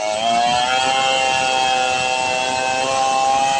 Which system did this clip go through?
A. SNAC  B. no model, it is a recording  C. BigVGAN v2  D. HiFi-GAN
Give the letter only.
B